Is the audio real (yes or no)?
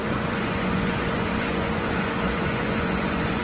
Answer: no